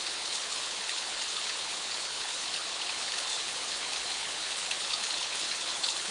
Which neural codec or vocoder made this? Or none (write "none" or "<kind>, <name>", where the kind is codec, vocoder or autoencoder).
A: codec, HILCodec